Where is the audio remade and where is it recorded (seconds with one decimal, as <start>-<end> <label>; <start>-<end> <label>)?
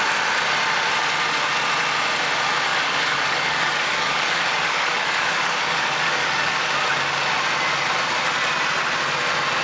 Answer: 0.0-2.7 recorded; 2.7-6.7 remade; 6.7-9.6 recorded